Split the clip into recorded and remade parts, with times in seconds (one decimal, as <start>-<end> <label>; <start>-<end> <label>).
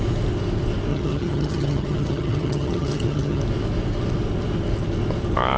0.0-0.9 recorded; 0.9-3.4 remade; 3.4-5.6 recorded